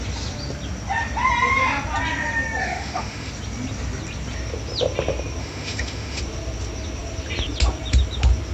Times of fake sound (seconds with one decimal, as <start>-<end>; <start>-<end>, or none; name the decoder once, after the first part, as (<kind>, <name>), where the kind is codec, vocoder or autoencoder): 2.6-3.3 (autoencoder, DAC-VAE); 5.4-6.2